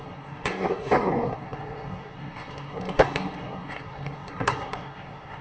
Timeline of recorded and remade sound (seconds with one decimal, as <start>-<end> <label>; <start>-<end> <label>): 0.0-5.4 remade